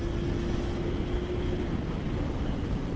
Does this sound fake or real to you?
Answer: real